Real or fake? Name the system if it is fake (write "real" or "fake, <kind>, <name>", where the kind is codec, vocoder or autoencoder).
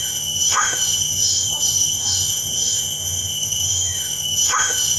fake, autoencoder, DAC-VAE